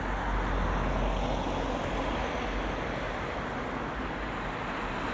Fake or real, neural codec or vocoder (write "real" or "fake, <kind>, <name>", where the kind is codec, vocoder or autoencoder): real